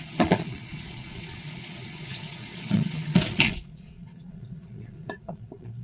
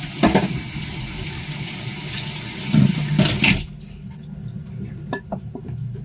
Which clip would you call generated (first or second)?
first